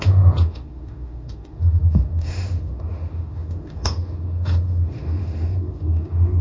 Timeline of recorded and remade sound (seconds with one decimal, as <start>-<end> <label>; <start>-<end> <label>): 0.0-6.4 remade